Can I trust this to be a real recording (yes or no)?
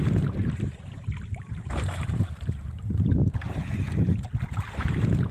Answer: no